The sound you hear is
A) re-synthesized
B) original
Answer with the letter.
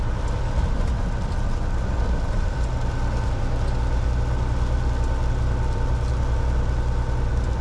B